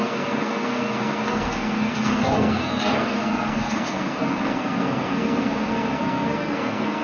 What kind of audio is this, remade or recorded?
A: remade